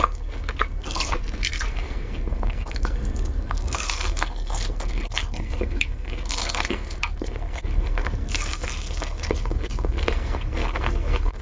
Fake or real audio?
fake